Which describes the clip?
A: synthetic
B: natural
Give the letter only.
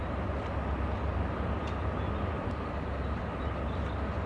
B